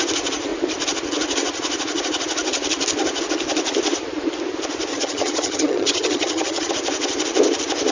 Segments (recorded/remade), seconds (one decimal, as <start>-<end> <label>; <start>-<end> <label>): 0.0-4.9 recorded; 4.9-6.7 remade; 6.7-7.9 recorded